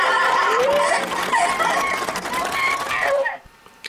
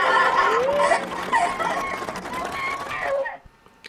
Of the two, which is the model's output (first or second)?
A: first